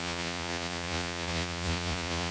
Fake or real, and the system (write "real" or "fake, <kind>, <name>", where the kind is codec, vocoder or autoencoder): fake, vocoder, Vocos